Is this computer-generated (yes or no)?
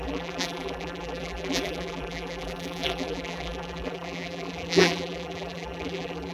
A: yes